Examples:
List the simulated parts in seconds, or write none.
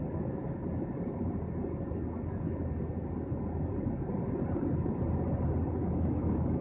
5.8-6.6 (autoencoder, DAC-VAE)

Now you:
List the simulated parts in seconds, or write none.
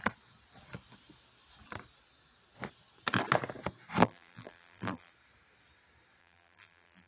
4.0-5.1 (vocoder, BigVGAN v2); 6.2-7.1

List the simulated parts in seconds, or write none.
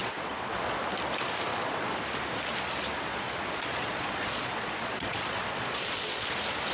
0.0-0.8 (vocoder, Vocos); 1.5-2.0; 3.1-6.3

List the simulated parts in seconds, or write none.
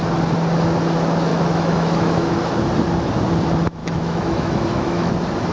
1.3-2.4 (autoencoder, DAC-VAE); 3.8-5.1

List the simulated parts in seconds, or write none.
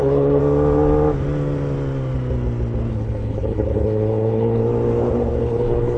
0.0-0.4 (codec, HILCodec); 2.9-4.6; 5.4-6.0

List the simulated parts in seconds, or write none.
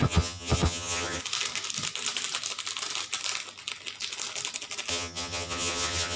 0.0-1.2 (vocoder, HiFi-GAN); 4.9-6.2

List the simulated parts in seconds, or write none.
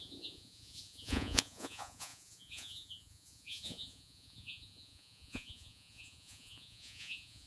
0.0-7.5 (vocoder, Vocos)